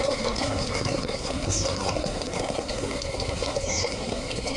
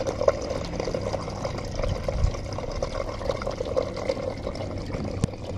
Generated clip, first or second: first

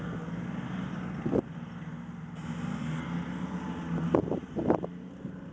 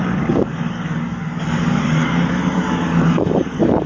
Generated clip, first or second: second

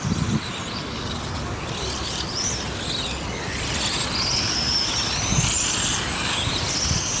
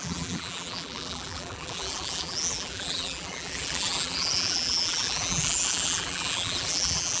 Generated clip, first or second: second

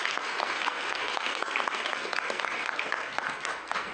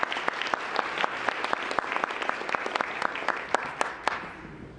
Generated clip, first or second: first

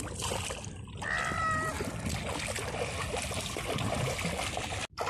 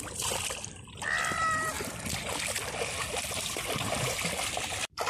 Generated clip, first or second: second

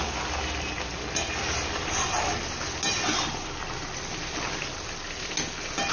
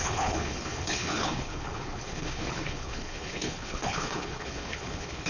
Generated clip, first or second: second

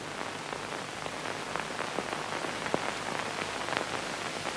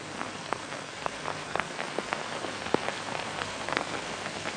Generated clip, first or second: second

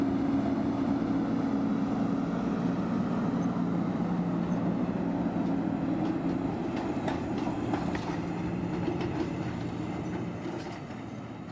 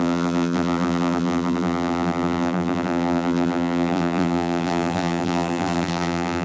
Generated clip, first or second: second